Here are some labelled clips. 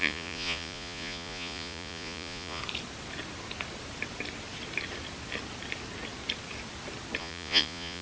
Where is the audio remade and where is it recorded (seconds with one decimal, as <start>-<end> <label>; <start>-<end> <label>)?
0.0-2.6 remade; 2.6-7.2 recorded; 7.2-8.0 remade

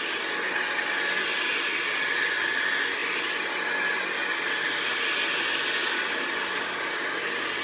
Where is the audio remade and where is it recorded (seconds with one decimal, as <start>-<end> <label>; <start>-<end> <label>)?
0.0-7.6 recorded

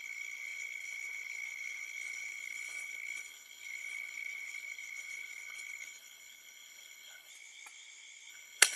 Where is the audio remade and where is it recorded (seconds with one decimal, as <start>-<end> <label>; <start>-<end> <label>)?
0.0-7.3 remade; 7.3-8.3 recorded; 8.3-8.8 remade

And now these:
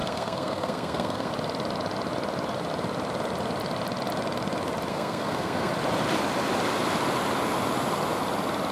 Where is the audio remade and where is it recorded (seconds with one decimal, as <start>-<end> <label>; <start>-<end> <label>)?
0.0-1.3 remade; 1.3-4.9 recorded; 4.9-5.7 remade; 5.7-8.7 recorded

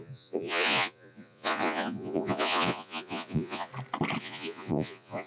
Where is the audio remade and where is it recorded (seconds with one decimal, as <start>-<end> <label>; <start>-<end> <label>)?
0.0-3.7 remade; 3.7-4.2 recorded; 4.2-5.3 remade